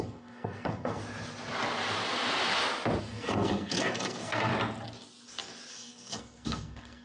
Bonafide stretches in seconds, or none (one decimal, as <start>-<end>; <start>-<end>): 1.0-3.0; 4.5-5.7